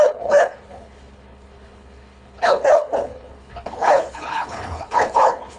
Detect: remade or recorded remade